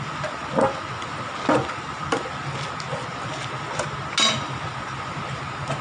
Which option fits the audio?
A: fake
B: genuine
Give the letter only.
B